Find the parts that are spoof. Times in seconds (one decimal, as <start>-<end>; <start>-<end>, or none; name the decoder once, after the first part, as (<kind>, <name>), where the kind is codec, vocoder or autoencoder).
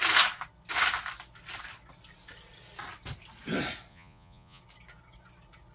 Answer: 3.9-4.6 (vocoder, Vocos)